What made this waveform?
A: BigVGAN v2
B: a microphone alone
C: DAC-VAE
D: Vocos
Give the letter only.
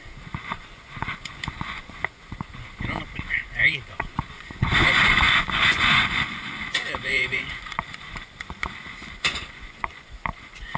D